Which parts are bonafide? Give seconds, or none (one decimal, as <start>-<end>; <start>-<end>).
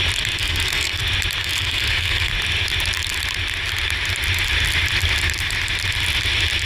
0.0-0.4; 1.0-1.4; 2.3-6.6